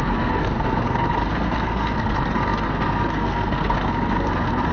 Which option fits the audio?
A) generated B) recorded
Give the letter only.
A